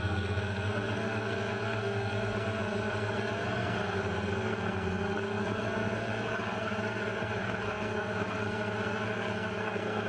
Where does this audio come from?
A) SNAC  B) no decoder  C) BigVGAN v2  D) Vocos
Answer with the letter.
A